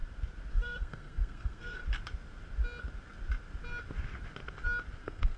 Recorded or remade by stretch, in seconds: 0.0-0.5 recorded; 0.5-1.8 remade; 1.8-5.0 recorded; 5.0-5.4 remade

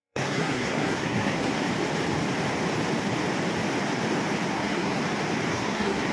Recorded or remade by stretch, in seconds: 0.0-1.7 remade; 1.7-4.5 recorded; 4.5-5.0 remade; 5.0-5.5 recorded; 5.5-6.1 remade